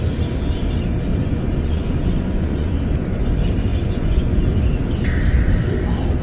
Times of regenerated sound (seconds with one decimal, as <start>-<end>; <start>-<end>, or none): 1.1-3.3; 3.7-4.4